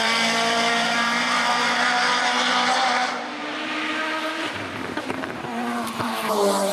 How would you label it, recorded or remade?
remade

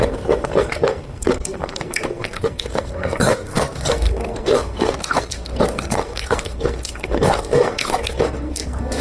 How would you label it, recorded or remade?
remade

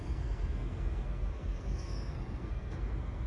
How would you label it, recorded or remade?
remade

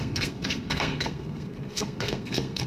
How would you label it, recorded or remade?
remade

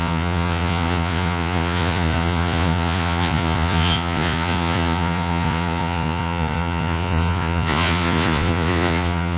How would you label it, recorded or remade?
remade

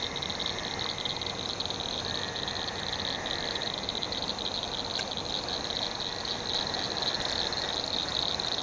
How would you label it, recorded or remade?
recorded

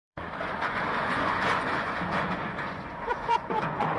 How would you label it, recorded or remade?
remade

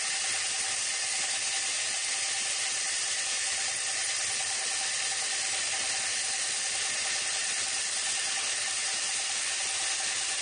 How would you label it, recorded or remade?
recorded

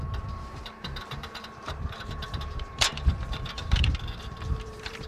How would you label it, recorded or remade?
remade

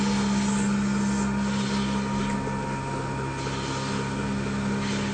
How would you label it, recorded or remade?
recorded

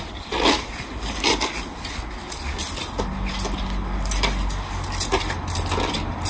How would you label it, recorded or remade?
recorded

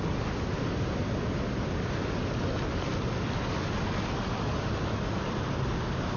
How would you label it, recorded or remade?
recorded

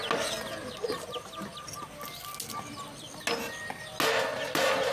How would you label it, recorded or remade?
recorded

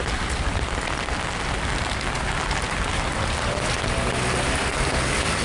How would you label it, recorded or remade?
recorded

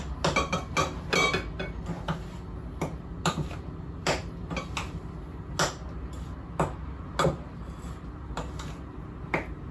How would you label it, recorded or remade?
recorded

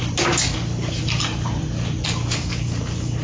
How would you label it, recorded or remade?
recorded